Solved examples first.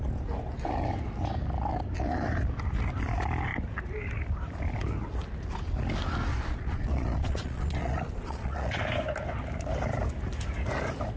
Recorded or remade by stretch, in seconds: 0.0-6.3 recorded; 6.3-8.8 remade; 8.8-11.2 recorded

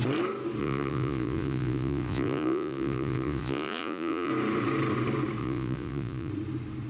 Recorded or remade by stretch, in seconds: 0.0-0.6 recorded; 0.6-4.3 remade; 4.3-5.4 recorded; 5.4-6.3 remade; 6.3-6.9 recorded

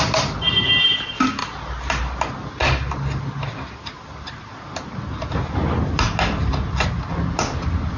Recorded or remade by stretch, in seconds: 0.0-8.0 recorded

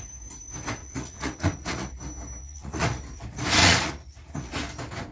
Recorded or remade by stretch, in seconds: 0.0-0.8 recorded; 0.8-1.9 remade; 1.9-2.4 recorded; 2.4-3.0 remade; 3.0-3.6 recorded; 3.6-4.5 remade; 4.5-5.1 recorded

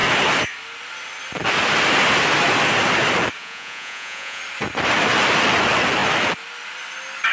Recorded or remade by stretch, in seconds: 0.0-3.4 recorded; 3.4-4.4 remade; 4.4-7.3 recorded

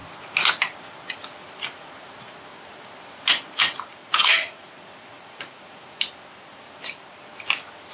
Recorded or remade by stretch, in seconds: 0.0-4.0 recorded; 4.0-6.0 remade; 6.0-7.9 recorded

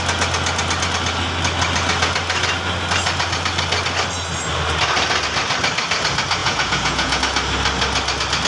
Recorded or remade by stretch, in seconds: 0.0-6.4 recorded; 6.4-7.2 remade; 7.2-8.5 recorded